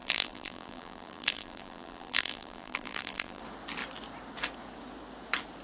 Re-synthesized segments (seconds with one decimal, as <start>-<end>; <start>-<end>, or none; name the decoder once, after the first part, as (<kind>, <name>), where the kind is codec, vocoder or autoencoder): 0.0-3.4 (vocoder, BigVGAN v2)